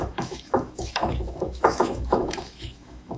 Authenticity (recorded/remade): remade